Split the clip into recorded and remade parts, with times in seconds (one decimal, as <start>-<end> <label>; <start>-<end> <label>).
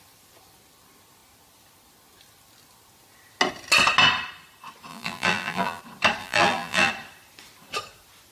0.0-4.9 recorded; 4.9-5.8 remade; 5.8-6.2 recorded; 6.2-6.9 remade; 6.9-8.3 recorded